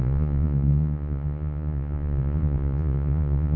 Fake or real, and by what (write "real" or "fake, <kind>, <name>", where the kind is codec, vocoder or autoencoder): fake, vocoder, Vocos